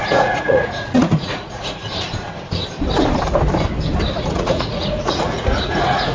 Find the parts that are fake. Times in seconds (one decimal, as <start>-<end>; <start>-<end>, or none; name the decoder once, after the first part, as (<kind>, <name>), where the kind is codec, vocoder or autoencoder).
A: 0.0-1.8 (vocoder, Vocos); 4.2-6.1